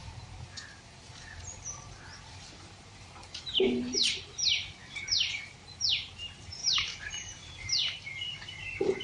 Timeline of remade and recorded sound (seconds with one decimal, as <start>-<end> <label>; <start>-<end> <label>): 0.0-9.0 remade